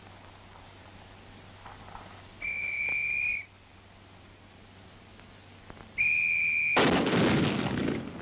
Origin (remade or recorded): recorded